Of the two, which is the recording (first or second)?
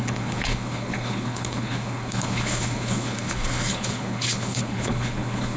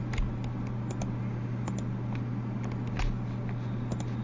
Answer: second